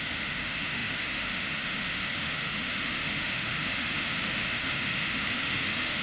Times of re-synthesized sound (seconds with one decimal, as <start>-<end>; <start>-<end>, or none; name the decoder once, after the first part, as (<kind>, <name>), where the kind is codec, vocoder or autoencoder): 0.0-6.0 (autoencoder, DAC-VAE)